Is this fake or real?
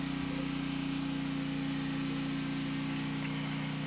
real